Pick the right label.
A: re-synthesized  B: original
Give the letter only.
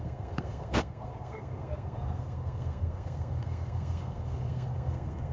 A